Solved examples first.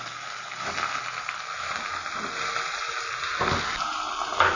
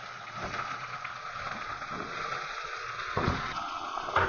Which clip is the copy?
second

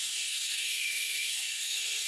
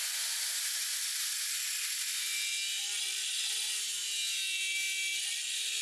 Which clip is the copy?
first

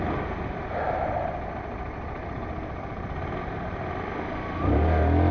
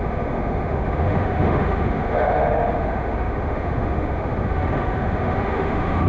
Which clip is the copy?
second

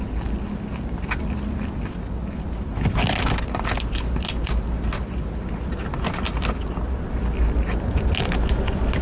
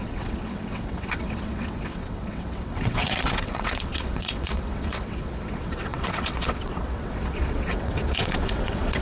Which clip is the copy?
second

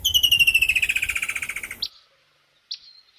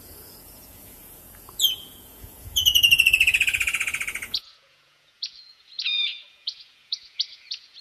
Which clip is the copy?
second